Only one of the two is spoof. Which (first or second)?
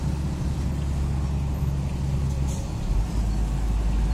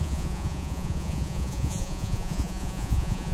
second